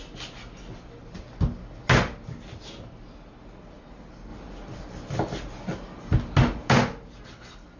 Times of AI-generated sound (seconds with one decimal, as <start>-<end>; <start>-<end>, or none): none